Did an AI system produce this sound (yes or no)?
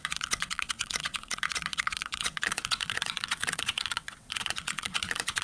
yes